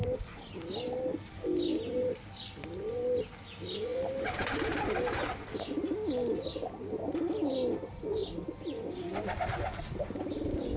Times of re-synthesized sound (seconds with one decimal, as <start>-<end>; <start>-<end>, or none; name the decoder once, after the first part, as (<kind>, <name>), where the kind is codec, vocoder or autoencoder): none

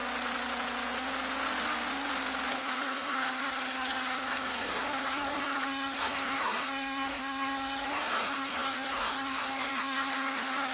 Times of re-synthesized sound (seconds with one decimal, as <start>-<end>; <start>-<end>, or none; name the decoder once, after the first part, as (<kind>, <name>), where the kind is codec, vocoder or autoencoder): 2.5-10.7 (codec, SNAC)

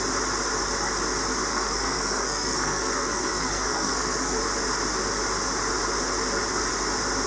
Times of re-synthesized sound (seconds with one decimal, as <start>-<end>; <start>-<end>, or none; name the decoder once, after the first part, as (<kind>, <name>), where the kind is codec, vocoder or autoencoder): 1.5-4.4 (codec, SNAC)

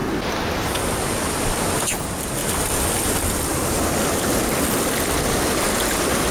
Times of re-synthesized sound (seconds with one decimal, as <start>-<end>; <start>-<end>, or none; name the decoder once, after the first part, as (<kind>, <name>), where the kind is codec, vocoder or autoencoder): none

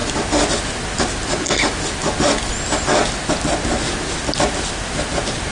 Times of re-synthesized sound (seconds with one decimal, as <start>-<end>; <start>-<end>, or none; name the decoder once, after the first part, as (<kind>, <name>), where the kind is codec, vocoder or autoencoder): none

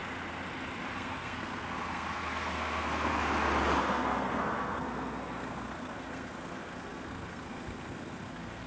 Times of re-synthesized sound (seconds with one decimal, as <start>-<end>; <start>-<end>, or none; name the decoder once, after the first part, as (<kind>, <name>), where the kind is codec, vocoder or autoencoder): 0.9-3.1 (codec, SNAC); 3.8-8.7